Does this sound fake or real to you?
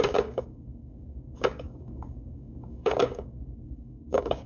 fake